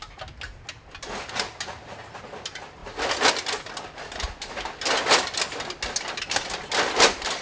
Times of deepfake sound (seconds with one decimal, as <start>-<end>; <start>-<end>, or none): none